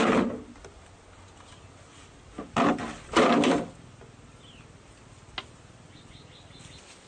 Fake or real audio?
real